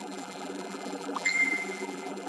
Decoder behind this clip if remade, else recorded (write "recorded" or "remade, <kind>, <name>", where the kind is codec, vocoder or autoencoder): remade, vocoder, BigVGAN v2